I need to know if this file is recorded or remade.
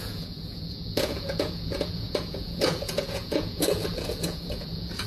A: remade